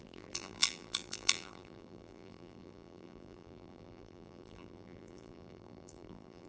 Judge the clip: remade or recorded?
remade